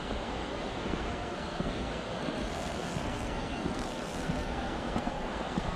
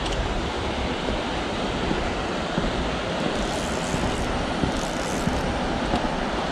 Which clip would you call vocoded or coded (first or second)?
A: first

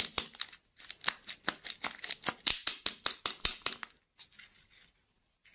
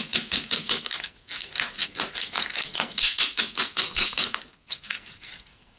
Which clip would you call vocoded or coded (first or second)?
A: second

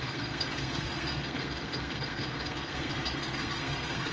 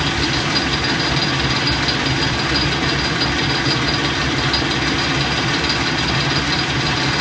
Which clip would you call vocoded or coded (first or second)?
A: first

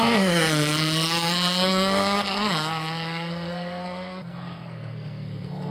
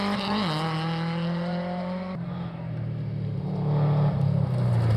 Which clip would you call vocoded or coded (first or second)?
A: first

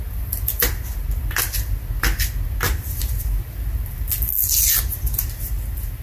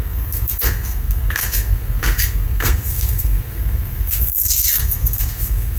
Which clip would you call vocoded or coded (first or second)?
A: second